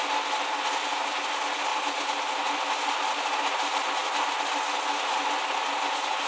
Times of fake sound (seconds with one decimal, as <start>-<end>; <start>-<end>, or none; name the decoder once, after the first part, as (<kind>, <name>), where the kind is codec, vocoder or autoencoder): none